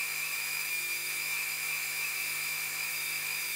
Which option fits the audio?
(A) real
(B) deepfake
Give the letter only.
B